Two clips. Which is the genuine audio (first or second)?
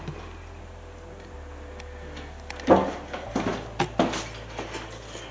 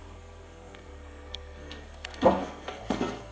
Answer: first